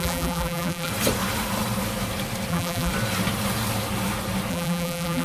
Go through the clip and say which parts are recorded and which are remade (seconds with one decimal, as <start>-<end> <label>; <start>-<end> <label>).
0.0-0.9 remade; 0.9-2.5 recorded; 2.5-2.9 remade; 2.9-4.5 recorded; 4.5-5.2 remade